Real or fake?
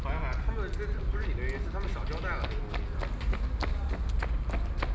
real